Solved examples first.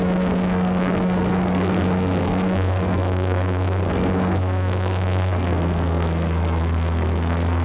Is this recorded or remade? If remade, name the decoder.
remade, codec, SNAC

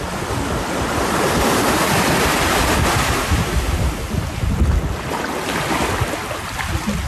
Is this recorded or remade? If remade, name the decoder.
recorded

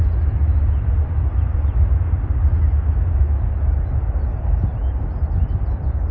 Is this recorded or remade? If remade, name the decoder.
recorded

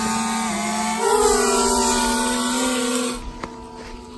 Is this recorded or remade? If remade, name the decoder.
recorded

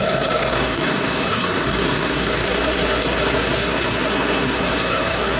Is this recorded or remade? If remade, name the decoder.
remade, codec, SNAC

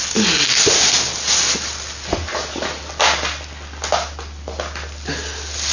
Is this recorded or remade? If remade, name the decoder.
recorded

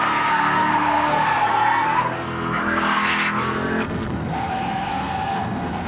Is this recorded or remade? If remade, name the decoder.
remade, codec, SNAC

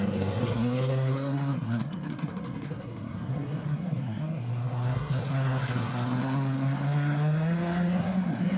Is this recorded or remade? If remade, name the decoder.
remade, codec, SNAC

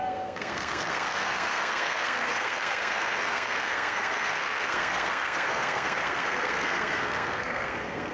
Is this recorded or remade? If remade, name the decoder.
remade, codec, SNAC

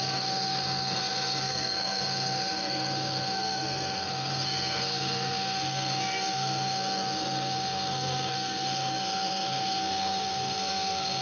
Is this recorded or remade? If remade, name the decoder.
remade, codec, SNAC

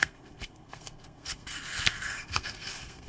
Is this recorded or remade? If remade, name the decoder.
remade, codec, SNAC